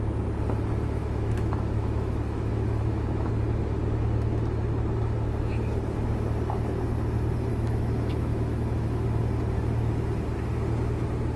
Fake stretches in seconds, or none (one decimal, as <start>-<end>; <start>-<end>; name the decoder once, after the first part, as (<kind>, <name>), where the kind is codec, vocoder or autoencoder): 1.0-3.3 (autoencoder, DAC-VAE); 7.5-9.2